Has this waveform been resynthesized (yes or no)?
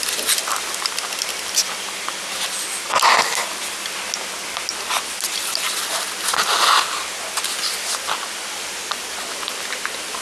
no